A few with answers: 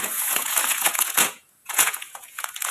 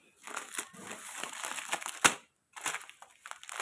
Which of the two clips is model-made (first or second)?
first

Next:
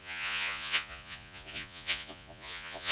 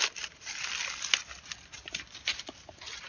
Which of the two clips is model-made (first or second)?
first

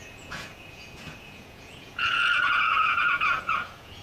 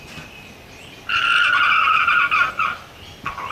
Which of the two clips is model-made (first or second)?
first